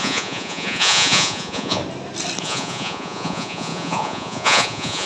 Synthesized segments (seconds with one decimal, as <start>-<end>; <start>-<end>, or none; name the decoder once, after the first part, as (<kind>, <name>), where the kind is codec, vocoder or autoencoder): 0.0-1.8 (vocoder, Vocos); 2.4-5.1